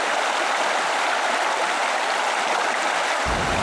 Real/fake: real